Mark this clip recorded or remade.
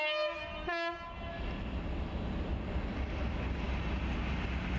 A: recorded